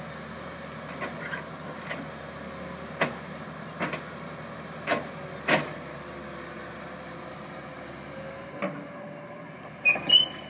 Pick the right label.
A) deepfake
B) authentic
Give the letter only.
B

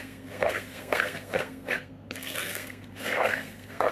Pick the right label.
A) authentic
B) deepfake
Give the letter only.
B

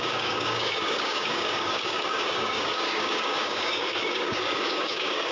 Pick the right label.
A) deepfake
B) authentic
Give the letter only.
A